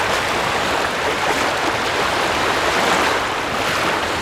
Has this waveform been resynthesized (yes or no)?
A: no